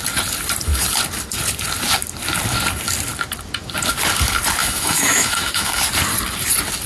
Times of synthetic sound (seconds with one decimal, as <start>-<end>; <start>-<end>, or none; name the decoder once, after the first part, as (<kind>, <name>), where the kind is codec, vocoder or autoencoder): 4.6-5.8 (autoencoder, DAC-VAE)